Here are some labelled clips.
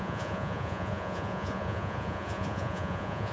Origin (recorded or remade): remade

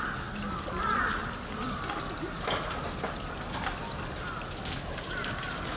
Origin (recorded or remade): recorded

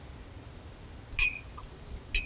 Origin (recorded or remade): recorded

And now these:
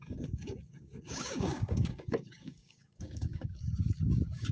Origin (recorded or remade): remade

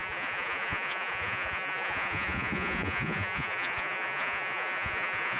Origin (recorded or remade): remade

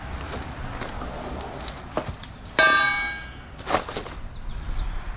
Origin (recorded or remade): recorded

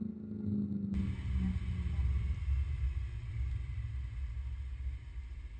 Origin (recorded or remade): recorded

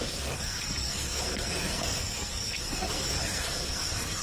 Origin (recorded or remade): remade